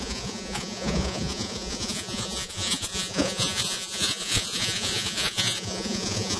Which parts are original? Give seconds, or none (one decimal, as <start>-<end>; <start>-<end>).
none